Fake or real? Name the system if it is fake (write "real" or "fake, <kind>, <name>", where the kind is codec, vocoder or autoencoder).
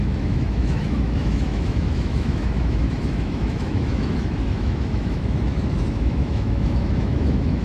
fake, autoencoder, DAC-VAE